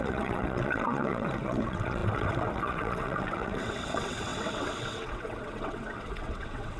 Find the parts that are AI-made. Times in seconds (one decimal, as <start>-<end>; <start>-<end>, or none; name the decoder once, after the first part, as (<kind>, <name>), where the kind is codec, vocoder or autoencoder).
0.0-6.8 (vocoder, WaveNeXt)

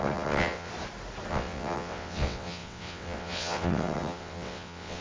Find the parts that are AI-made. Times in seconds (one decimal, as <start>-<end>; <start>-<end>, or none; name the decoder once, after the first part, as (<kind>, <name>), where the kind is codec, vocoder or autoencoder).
0.0-0.7 (vocoder, WaveNeXt); 1.3-5.0

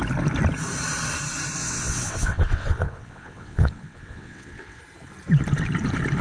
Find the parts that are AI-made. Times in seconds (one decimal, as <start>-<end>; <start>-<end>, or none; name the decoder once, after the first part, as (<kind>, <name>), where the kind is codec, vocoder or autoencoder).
1.6-4.8 (vocoder, WaveNeXt)